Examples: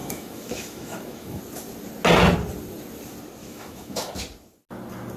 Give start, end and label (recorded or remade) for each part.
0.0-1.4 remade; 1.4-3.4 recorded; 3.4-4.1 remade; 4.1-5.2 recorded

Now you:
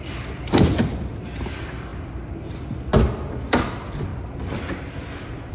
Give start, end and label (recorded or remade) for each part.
0.0-2.9 remade; 2.9-3.4 recorded; 3.4-4.1 remade; 4.1-5.5 recorded

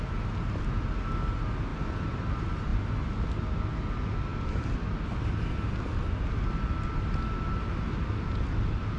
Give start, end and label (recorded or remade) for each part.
0.0-9.0 recorded

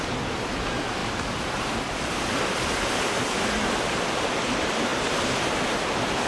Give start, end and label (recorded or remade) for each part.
0.0-1.0 recorded; 1.0-4.1 remade; 4.1-6.3 recorded

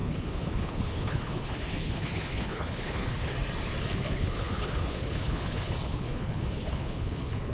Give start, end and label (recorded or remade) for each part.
0.0-3.3 remade; 3.3-3.9 recorded; 3.9-7.5 remade